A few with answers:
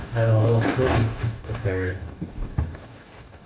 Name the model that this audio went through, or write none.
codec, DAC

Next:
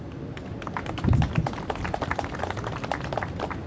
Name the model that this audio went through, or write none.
none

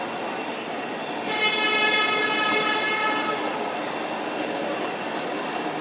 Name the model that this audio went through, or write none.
none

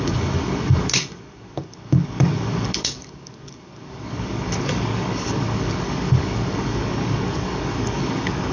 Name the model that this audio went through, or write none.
codec, DAC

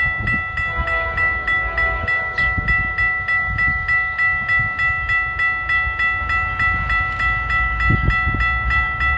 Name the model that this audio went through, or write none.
none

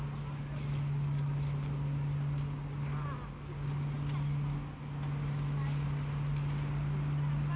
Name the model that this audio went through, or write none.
none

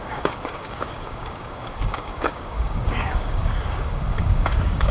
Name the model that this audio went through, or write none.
codec, DAC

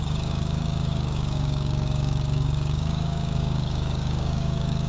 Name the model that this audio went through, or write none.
codec, DAC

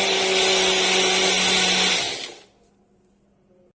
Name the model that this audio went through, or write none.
none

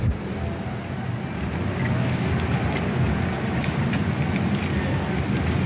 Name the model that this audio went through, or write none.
none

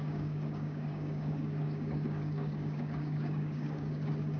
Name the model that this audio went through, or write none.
codec, DAC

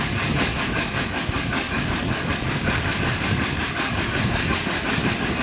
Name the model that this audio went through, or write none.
codec, DAC